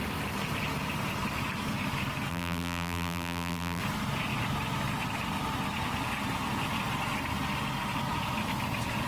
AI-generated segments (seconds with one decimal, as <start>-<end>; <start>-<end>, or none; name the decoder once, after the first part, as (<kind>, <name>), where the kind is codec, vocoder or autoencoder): 2.3-3.8 (vocoder, BigVGAN v2)

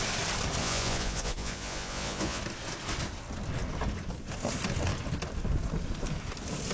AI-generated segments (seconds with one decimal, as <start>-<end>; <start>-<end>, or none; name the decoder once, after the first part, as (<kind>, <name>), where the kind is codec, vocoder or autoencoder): 0.6-2.4 (vocoder, Vocos)

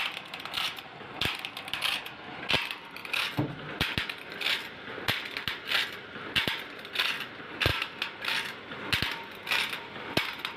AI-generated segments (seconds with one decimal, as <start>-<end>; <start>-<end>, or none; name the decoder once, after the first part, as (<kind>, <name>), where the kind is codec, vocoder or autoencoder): none

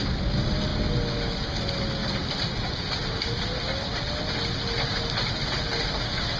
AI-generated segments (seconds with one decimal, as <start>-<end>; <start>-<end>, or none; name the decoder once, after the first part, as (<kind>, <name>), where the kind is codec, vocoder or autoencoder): none

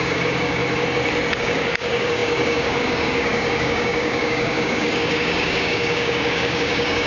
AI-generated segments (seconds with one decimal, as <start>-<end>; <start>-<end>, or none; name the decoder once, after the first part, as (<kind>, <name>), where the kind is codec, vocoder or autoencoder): 0.0-0.6 (codec, DAC); 1.4-7.1